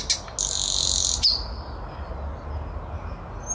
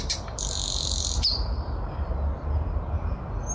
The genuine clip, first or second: first